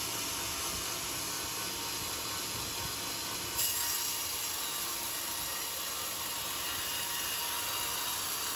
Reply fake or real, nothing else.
real